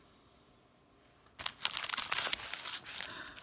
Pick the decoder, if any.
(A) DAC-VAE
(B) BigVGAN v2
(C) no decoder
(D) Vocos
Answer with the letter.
B